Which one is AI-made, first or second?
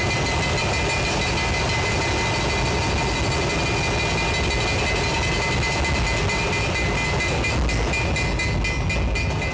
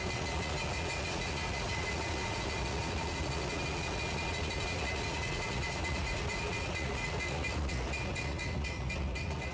second